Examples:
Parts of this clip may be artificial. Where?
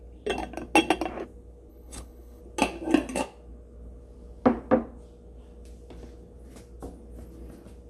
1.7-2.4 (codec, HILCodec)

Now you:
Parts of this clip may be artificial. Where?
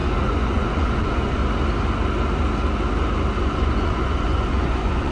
0.0-1.4 (vocoder, Vocos); 3.4-5.1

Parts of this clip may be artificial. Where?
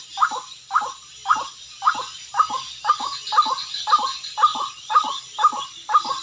4.5-5.1 (vocoder, Vocos)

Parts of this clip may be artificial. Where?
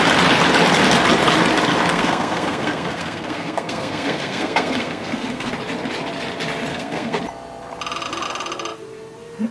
1.9-5.5 (codec, SNAC); 6.7-7.2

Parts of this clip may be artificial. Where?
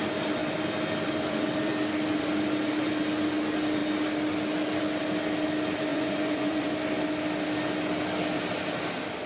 5.9-6.7 (vocoder, Vocos)